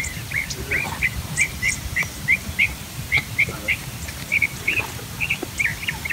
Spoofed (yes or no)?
yes